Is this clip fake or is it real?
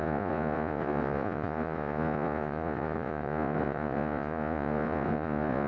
fake